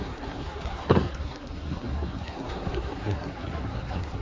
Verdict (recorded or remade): remade